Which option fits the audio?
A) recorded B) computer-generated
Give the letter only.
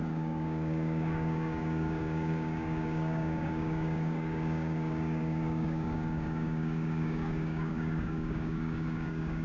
B